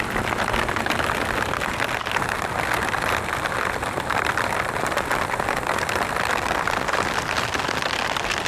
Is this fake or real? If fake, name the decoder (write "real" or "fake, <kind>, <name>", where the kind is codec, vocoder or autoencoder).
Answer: real